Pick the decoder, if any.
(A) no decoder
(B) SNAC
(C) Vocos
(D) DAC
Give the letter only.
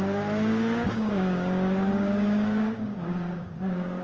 D